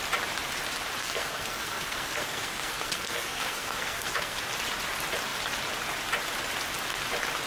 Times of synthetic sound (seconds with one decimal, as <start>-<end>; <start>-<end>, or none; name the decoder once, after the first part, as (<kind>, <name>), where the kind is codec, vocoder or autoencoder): 1.0-4.4 (codec, SNAC)